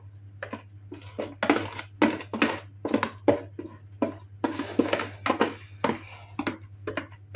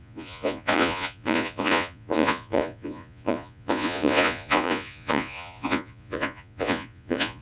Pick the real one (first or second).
first